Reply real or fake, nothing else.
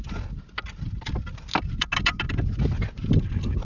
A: real